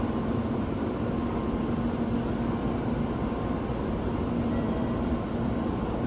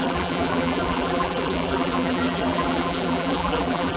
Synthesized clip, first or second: second